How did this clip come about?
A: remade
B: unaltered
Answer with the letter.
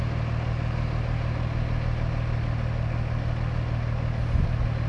B